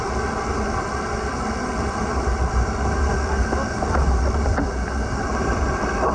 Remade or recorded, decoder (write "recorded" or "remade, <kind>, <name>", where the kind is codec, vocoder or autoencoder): remade, vocoder, BigVGAN v2